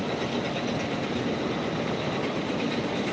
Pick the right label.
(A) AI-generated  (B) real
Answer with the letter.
B